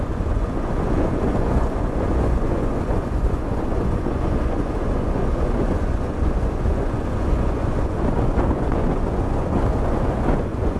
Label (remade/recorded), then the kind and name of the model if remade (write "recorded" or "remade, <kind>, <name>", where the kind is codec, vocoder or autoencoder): remade, vocoder, Vocos